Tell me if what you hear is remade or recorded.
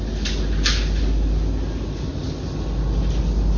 recorded